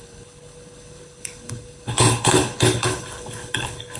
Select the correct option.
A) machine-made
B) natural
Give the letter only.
A